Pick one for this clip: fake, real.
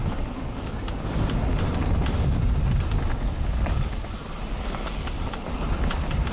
real